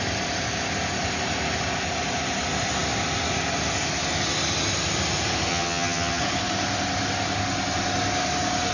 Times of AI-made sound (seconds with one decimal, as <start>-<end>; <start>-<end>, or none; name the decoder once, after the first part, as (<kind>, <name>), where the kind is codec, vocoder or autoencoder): 5.5-6.2 (vocoder, HiFi-GAN)